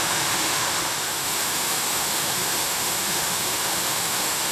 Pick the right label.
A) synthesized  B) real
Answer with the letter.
A